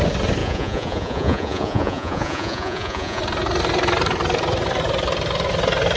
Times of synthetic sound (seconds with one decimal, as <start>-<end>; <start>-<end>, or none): 0.4-3.2